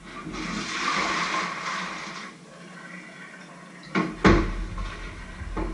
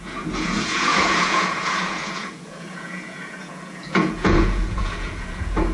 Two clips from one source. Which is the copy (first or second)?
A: second